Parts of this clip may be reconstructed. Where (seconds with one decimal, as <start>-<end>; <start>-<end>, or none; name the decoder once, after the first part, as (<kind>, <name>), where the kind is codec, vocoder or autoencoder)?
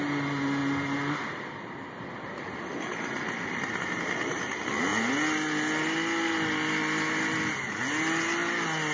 none